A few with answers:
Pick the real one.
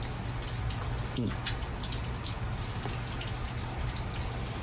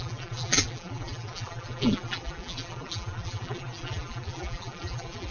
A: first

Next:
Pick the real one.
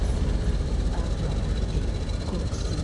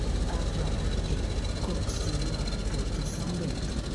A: second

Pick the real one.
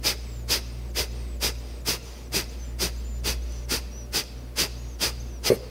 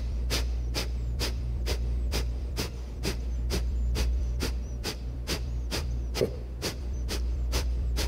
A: first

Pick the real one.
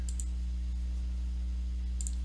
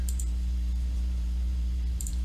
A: first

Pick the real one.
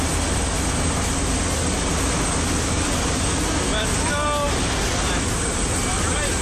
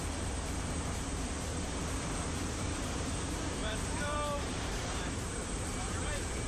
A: first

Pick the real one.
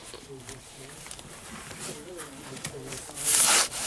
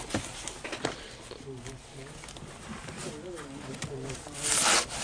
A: second